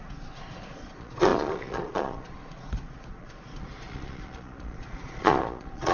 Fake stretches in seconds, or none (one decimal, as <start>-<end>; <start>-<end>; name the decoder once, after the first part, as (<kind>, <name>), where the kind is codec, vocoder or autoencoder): 0.0-5.9 (vocoder, Vocos)